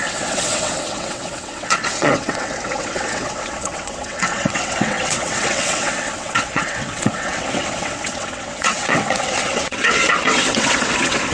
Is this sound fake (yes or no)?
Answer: yes